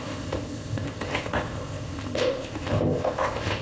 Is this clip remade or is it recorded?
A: remade